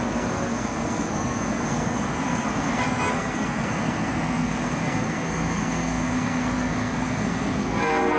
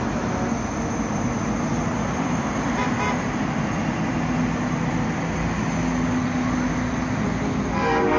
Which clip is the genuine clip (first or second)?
second